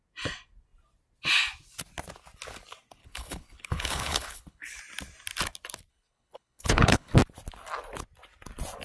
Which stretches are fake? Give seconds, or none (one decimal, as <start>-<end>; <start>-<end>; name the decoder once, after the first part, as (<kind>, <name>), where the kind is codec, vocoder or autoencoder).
3.0-4.8 (codec, HILCodec); 5.9-7.1